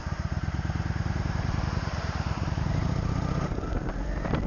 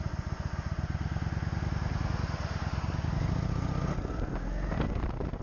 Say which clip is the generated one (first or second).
first